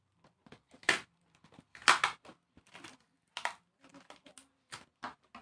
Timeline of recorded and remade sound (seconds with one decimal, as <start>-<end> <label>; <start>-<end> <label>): 0.0-5.4 recorded